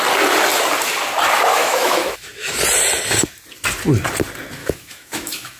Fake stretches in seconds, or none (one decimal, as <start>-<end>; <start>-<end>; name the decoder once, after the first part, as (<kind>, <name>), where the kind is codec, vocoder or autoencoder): 1.6-2.6 (autoencoder, DAC-VAE); 4.6-5.6